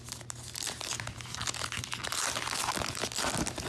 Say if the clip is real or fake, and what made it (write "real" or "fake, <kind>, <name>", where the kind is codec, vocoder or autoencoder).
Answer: real